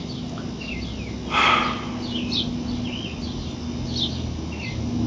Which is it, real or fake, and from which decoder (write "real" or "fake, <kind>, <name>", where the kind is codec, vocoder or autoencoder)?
real